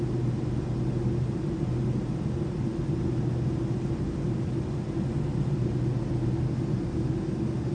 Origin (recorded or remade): recorded